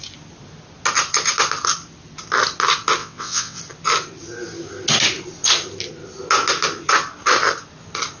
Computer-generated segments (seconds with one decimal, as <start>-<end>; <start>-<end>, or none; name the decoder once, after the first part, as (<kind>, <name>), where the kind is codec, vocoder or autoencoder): 3.0-3.6 (vocoder, WaveNeXt)